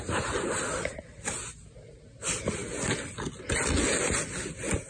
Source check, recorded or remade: recorded